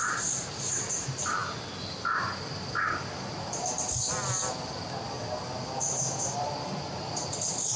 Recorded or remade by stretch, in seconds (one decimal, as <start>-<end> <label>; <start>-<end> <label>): 0.0-7.8 recorded